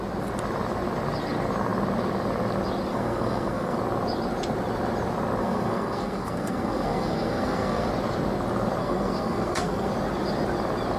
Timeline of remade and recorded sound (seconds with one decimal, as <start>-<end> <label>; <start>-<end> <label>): 0.0-2.9 recorded; 2.9-3.8 remade; 3.8-5.4 recorded; 5.4-7.9 remade; 7.9-8.8 recorded; 8.8-9.9 remade; 9.9-11.0 recorded